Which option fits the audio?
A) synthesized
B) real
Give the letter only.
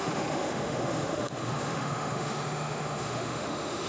A